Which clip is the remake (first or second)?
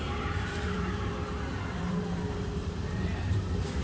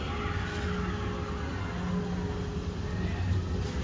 first